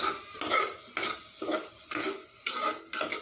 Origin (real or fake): real